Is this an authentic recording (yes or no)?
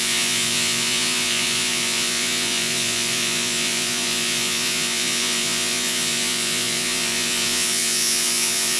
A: no